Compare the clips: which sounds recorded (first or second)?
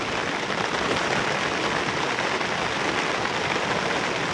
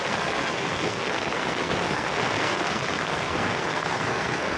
first